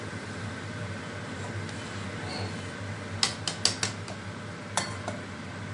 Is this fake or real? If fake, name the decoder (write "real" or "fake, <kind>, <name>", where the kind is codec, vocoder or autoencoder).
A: real